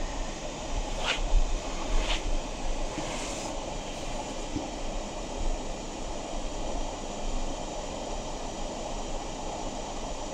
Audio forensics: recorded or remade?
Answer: remade